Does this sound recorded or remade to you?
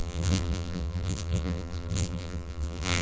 remade